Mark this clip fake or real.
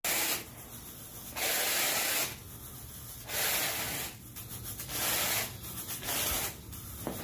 real